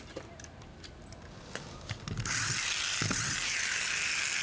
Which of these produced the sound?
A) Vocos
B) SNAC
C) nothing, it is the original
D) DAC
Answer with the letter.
C